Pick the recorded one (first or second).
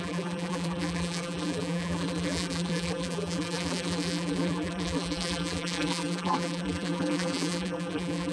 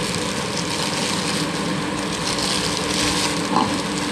second